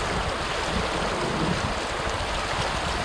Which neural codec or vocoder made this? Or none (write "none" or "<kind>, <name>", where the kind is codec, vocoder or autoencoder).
none